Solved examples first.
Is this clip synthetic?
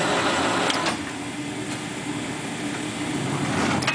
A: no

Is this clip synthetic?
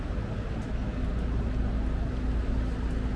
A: no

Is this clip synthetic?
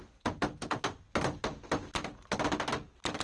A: no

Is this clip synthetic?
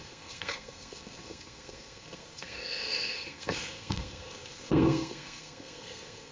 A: yes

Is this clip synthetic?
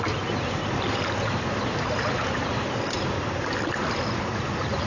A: no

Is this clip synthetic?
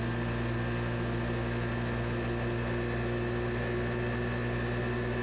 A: no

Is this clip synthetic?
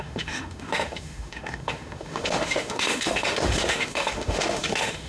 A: yes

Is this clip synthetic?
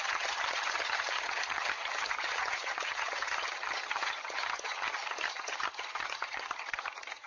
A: yes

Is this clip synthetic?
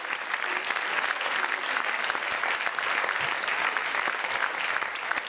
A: no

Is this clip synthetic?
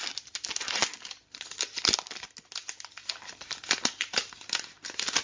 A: no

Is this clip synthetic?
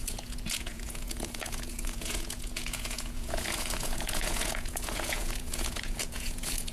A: yes